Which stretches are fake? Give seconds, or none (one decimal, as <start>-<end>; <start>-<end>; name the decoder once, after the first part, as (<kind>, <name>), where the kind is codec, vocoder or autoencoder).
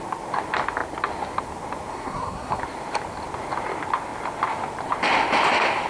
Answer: 1.9-2.6 (codec, SNAC)